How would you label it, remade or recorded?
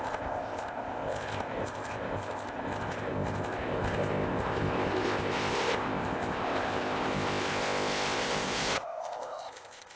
remade